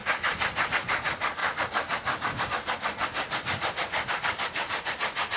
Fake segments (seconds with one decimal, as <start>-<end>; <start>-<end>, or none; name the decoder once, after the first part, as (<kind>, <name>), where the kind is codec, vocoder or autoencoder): 0.0-0.7 (vocoder, BigVGAN v2); 1.4-2.5; 3.0-3.6